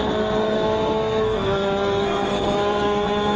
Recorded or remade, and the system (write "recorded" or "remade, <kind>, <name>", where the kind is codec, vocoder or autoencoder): remade, codec, SNAC